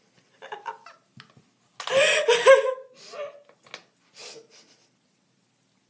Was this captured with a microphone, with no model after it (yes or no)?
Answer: yes